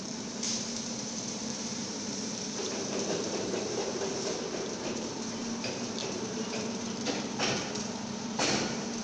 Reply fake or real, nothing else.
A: fake